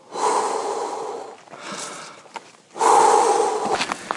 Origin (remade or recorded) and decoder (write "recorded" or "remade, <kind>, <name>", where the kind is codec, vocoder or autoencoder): recorded